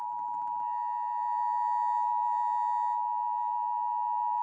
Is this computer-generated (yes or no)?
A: no